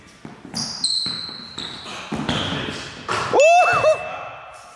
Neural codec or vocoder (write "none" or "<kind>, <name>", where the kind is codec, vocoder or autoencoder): none